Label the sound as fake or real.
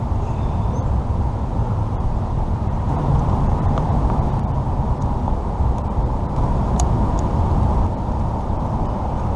fake